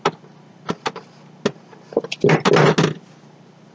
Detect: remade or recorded recorded